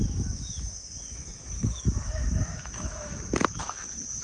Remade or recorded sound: remade